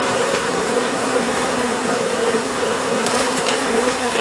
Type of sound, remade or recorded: remade